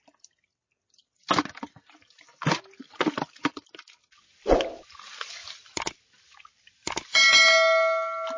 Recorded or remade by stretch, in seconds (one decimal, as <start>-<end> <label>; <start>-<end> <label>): 0.0-8.4 recorded